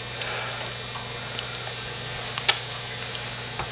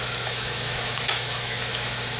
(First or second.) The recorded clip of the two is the first